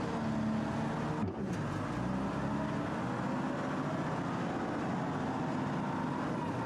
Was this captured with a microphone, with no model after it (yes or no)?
yes